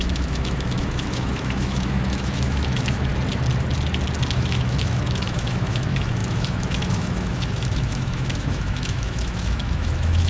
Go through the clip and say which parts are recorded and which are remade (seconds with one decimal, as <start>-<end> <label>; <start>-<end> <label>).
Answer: 0.0-3.1 remade; 3.1-4.3 recorded; 4.3-10.3 remade